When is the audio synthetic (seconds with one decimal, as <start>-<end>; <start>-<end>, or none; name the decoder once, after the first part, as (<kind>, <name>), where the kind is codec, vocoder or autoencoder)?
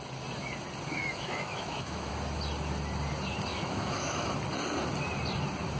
1.0-2.1 (autoencoder, DAC-VAE); 3.5-4.3